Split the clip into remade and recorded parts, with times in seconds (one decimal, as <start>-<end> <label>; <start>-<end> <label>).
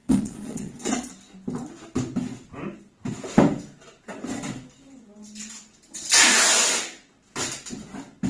0.0-1.1 remade; 1.1-8.3 recorded